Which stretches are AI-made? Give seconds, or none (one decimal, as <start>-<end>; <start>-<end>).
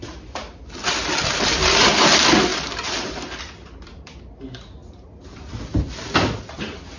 none